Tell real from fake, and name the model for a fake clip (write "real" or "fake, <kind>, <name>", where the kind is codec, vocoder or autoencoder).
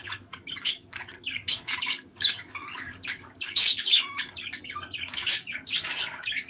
fake, codec, DAC